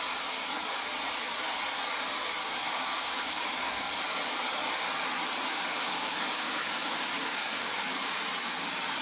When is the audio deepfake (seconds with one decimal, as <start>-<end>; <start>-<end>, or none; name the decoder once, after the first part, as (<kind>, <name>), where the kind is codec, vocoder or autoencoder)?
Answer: 2.4-4.0 (codec, DAC); 5.5-8.2